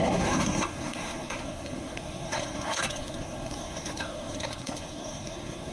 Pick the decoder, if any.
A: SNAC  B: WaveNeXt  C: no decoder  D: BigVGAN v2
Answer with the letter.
A